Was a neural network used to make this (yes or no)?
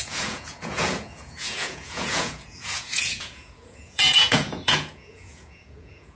yes